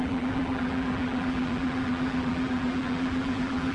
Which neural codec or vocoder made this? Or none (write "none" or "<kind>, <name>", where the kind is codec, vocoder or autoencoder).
vocoder, BigVGAN v2